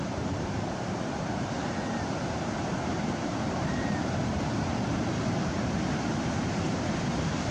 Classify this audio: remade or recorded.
remade